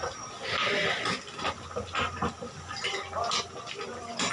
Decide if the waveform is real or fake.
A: real